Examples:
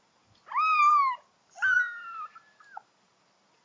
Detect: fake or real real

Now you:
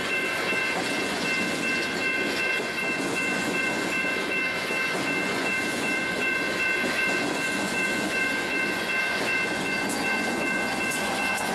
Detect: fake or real fake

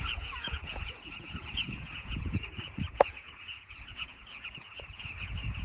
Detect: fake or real fake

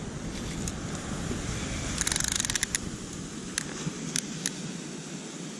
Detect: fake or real real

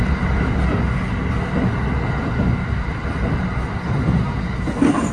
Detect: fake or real real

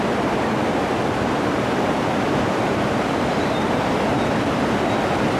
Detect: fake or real real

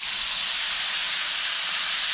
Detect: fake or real real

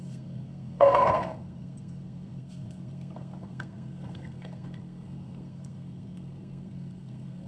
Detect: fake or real fake